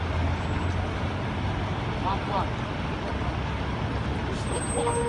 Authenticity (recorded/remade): recorded